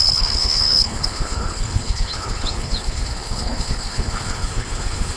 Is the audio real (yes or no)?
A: no